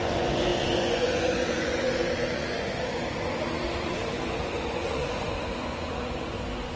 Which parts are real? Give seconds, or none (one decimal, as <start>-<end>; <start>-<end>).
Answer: none